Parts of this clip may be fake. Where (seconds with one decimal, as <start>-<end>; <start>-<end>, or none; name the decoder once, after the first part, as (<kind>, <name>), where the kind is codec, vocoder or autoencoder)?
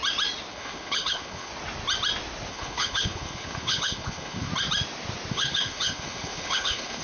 0.5-1.5 (codec, HILCodec); 2.5-4.5; 5.3-7.0